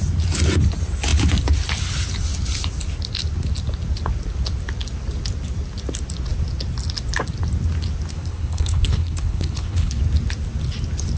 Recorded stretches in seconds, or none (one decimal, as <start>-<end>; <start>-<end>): 0.0-8.1; 10.0-11.2